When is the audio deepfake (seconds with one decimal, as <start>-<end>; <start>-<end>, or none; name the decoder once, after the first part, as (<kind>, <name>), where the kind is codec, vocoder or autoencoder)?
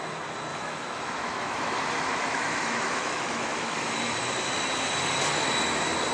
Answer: 0.5-4.2 (autoencoder, DAC-VAE)